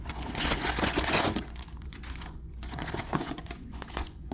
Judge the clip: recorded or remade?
remade